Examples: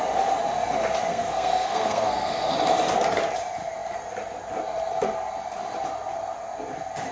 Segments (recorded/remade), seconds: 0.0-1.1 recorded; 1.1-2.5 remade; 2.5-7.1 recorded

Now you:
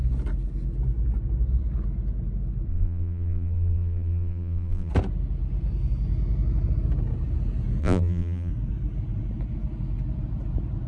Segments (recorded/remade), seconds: 0.0-2.7 recorded; 2.7-4.9 remade; 4.9-7.8 recorded; 7.8-8.5 remade; 8.5-10.9 recorded

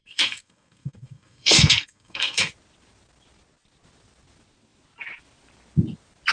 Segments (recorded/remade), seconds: 0.0-2.5 remade; 2.5-6.3 recorded

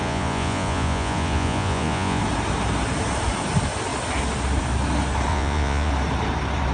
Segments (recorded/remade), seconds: 0.0-2.2 remade; 2.2-5.3 recorded; 5.3-5.9 remade; 5.9-6.7 recorded

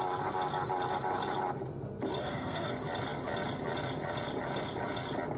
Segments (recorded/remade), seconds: 0.0-2.2 recorded; 2.2-2.7 remade; 2.7-5.4 recorded

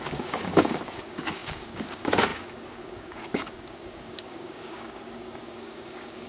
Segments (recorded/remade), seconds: 0.0-6.3 remade

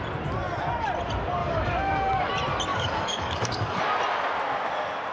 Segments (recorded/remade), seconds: 0.0-1.4 recorded; 1.4-2.3 remade; 2.3-2.7 recorded; 2.7-3.8 remade; 3.8-5.1 recorded